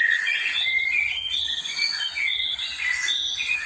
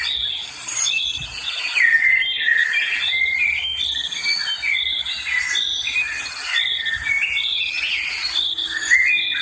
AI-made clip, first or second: first